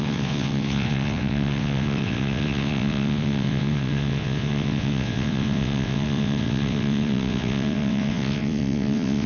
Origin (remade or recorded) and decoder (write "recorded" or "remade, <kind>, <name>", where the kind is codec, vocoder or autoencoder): remade, vocoder, WaveNeXt